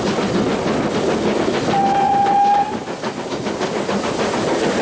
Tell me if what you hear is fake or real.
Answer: real